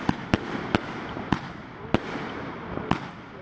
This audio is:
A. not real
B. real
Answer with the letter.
B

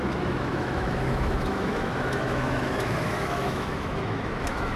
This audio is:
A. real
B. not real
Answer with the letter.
B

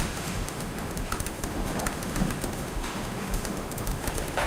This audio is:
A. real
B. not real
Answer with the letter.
B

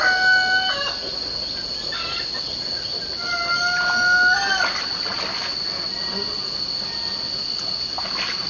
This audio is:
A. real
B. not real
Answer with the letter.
A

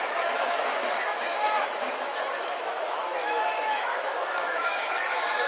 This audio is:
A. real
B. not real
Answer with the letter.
B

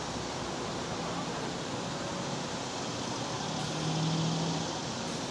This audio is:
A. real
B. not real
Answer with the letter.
A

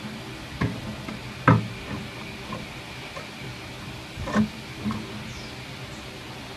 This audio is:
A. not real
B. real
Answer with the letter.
B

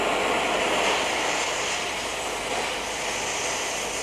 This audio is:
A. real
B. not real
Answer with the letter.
A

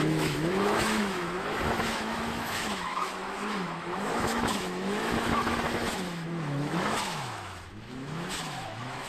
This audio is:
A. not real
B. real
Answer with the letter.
A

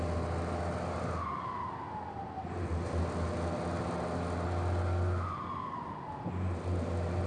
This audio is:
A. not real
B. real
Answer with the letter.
B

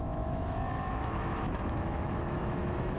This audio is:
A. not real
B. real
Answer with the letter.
A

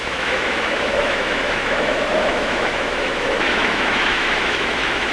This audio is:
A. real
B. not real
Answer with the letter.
B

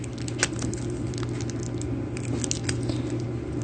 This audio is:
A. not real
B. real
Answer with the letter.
B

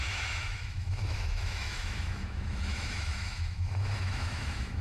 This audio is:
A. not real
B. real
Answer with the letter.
A